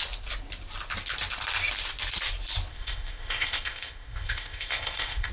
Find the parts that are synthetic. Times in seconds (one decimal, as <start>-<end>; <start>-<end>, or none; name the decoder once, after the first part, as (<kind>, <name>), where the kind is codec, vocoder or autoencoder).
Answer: 2.7-5.3 (codec, ZipCodec)